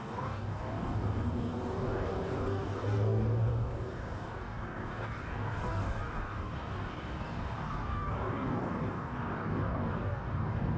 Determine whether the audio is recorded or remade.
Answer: remade